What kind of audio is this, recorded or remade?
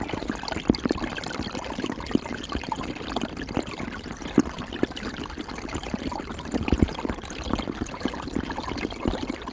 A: remade